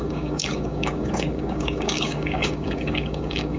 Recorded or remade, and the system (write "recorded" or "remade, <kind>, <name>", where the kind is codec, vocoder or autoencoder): remade, codec, DAC